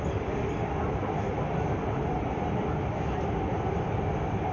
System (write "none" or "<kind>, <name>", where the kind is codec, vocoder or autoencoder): none